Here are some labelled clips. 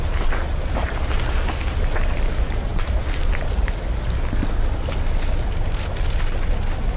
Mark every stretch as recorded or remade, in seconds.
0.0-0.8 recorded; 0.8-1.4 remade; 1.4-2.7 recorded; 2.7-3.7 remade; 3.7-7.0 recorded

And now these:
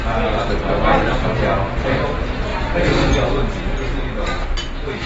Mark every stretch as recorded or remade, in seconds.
0.0-5.1 recorded

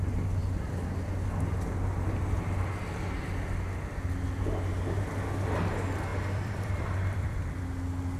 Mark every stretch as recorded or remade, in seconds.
0.0-6.1 recorded; 6.1-7.6 remade; 7.6-8.2 recorded

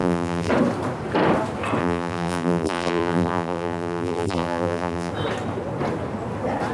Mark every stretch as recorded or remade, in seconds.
0.0-0.5 remade; 0.5-1.8 recorded; 1.8-5.1 remade; 5.1-6.7 recorded